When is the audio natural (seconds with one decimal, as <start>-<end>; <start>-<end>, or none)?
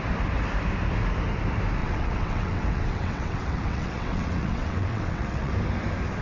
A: 0.0-1.8; 5.5-6.2